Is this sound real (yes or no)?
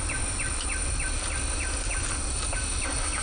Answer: yes